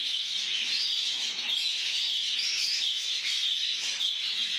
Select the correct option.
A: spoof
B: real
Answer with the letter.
A